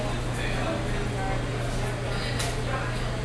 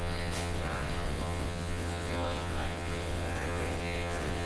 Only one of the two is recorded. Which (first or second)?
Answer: first